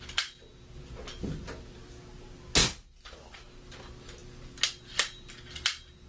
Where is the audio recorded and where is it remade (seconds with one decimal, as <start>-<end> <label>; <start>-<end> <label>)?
0.0-6.1 recorded